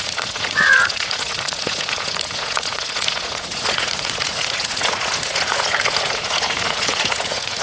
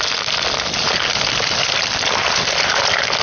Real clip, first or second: second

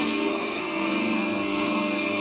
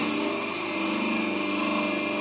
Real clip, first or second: second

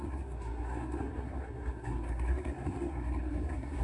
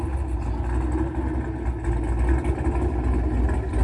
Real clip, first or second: second